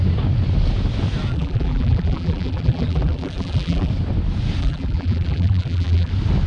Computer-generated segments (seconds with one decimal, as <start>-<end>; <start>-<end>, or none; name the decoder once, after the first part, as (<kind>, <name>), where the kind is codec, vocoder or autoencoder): 1.3-3.9 (vocoder, BigVGAN v2); 4.6-6.1